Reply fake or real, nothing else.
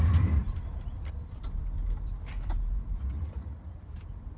fake